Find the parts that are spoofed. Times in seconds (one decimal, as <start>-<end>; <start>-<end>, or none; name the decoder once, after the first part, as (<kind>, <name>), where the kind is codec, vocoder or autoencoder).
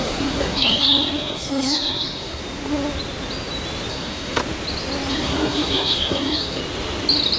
0.0-2.4 (codec, SNAC); 3.9-4.4; 5.1-6.6